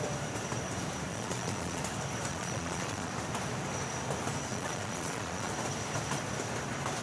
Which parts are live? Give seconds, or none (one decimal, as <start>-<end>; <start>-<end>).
0.0-1.1; 1.8-2.3; 3.1-4.5; 5.5-7.0